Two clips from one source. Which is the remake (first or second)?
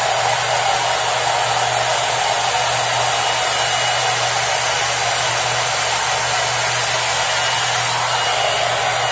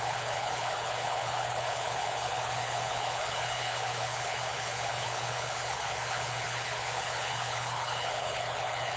second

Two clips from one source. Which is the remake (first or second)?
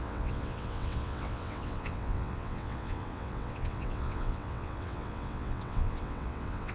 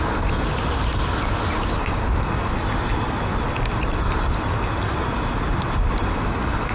first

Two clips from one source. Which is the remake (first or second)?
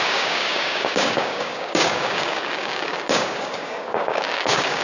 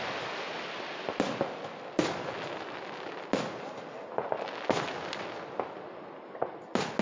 first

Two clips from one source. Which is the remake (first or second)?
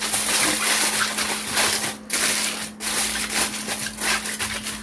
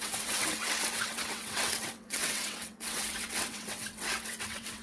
second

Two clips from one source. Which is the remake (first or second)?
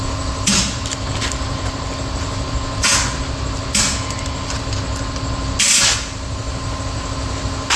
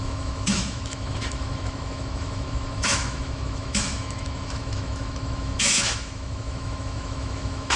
second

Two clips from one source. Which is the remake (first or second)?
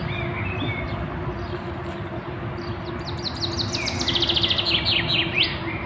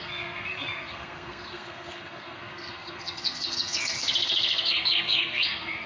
second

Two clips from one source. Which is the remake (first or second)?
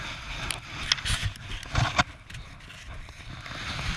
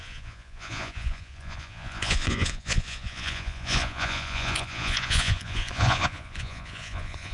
second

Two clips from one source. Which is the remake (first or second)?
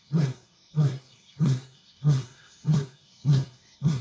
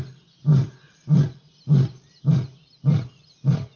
first